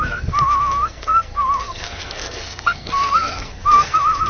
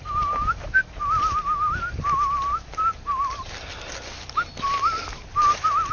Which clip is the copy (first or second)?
first